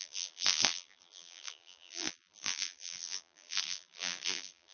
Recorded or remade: remade